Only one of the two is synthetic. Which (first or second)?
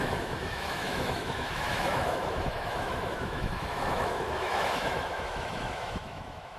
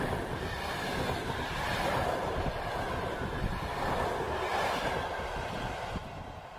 first